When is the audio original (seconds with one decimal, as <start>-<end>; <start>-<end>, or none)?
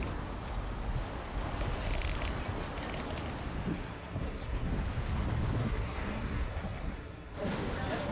0.0-3.7; 4.7-5.6; 7.3-8.1